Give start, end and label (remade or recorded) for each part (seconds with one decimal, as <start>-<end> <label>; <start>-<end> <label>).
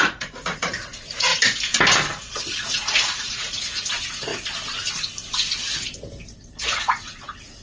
0.0-1.3 remade; 1.3-2.3 recorded; 2.3-4.3 remade; 4.3-6.6 recorded; 6.6-7.6 remade